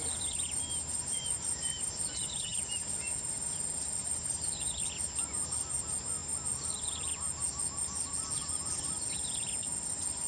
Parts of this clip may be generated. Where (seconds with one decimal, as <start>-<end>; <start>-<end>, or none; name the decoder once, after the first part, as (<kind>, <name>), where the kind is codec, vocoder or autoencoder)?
none

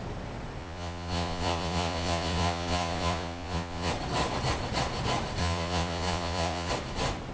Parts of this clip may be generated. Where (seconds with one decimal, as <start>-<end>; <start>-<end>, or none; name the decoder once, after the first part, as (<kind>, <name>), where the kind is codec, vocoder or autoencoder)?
0.6-3.9 (vocoder, Vocos); 5.4-6.7